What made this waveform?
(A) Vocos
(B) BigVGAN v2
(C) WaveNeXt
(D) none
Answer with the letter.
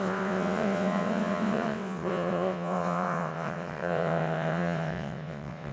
C